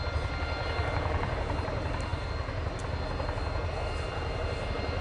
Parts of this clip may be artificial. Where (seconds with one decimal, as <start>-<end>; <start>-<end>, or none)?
none